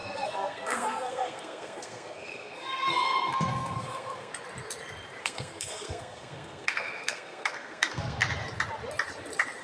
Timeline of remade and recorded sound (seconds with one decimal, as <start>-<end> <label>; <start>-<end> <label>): 0.0-4.3 remade; 4.3-5.2 recorded; 5.2-8.2 remade; 8.2-9.6 recorded